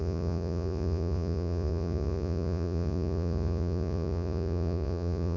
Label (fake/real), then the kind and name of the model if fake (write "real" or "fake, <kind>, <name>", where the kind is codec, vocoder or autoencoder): fake, vocoder, Vocos